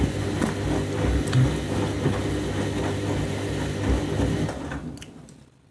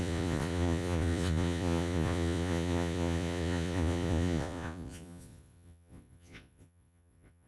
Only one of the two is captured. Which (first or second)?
first